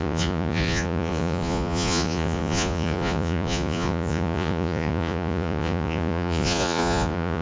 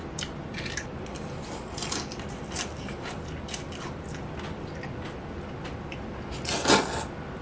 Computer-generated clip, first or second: first